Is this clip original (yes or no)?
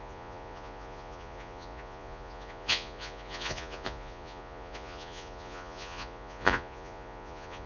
no